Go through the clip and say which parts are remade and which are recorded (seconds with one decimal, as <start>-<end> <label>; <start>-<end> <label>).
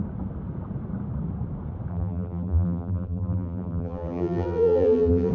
0.0-1.9 recorded; 1.9-5.3 remade